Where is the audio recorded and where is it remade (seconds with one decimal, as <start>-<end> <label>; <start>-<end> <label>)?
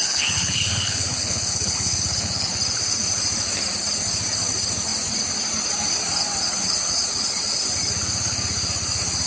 0.0-2.5 remade; 2.5-9.3 recorded